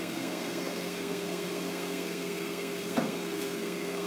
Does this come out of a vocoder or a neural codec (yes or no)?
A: yes